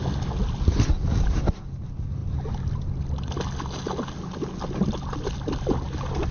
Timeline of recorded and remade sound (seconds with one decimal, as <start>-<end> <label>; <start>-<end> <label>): 0.0-6.3 recorded

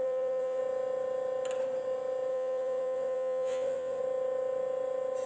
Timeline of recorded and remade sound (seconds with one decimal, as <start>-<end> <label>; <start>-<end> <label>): 0.0-0.6 remade; 0.6-2.3 recorded; 2.3-4.0 remade; 4.0-5.3 recorded

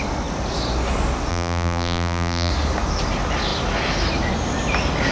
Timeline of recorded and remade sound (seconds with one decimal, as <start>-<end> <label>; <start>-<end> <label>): 0.0-1.3 recorded; 1.3-2.5 remade; 2.5-5.1 recorded

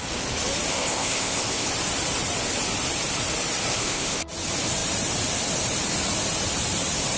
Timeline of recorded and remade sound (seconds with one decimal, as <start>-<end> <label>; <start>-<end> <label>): 0.0-0.7 recorded; 0.7-1.7 remade; 1.7-3.7 recorded; 3.7-4.2 remade; 4.2-7.2 recorded